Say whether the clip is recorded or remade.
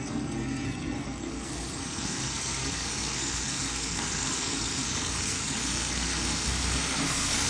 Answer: remade